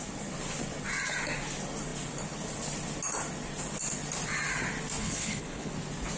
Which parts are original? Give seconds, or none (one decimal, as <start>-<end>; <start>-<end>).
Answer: 0.0-5.0; 5.7-6.2